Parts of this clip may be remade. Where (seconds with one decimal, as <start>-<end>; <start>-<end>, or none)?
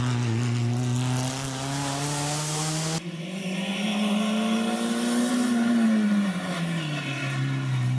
none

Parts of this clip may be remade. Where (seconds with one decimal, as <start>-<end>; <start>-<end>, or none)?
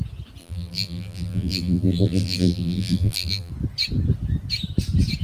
0.4-3.5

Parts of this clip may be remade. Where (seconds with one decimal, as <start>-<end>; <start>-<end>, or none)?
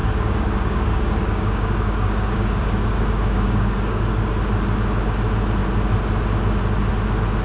0.0-4.4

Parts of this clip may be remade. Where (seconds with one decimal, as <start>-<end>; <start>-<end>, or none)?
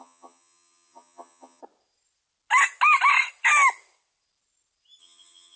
0.0-1.6; 5.0-5.6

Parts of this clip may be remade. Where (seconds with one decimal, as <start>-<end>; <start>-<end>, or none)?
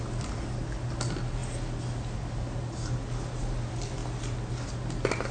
none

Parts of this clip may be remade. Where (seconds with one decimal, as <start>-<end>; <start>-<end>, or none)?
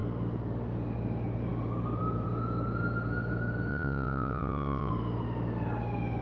3.7-4.9